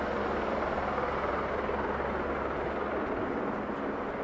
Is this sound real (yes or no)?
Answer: yes